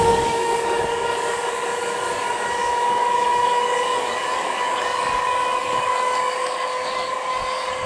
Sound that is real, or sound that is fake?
fake